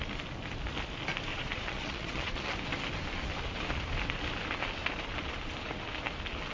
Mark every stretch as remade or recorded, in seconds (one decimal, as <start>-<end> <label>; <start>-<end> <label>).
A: 0.0-1.3 recorded; 1.3-2.5 remade; 2.5-6.5 recorded